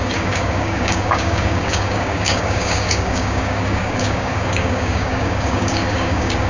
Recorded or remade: remade